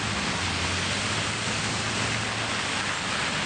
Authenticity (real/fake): real